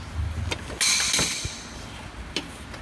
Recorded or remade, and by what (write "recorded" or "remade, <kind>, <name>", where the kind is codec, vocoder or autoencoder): recorded